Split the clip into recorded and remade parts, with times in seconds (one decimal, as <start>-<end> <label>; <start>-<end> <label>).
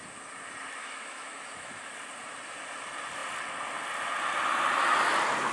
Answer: 0.0-0.8 recorded; 0.8-1.9 remade; 1.9-5.5 recorded